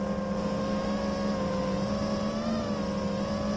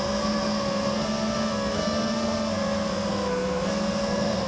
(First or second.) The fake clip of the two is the second